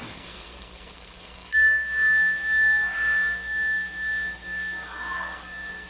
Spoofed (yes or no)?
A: yes